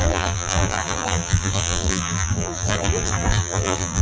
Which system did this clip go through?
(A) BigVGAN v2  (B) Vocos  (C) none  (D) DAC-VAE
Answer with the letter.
A